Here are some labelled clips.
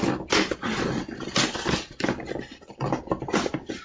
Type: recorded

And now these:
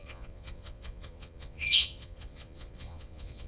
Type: remade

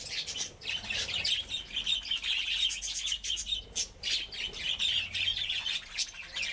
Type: recorded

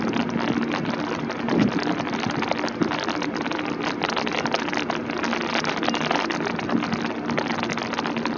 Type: recorded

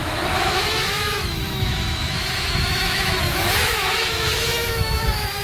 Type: remade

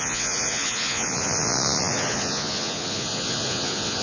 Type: remade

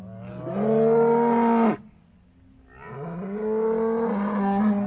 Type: recorded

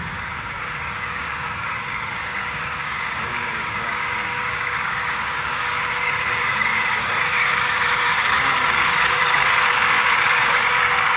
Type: remade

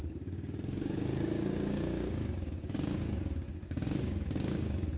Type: remade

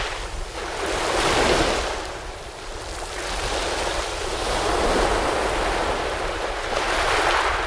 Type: recorded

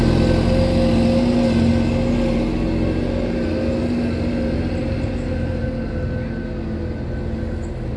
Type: recorded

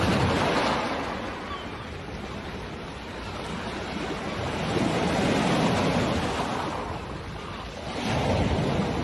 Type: recorded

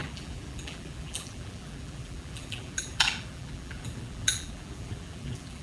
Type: remade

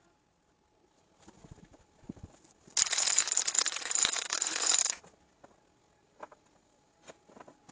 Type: recorded